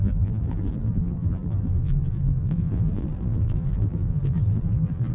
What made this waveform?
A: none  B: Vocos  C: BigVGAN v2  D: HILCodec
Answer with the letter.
C